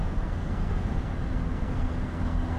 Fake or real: fake